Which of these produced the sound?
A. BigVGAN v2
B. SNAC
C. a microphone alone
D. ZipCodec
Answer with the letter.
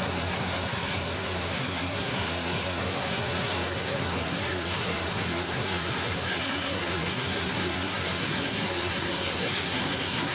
B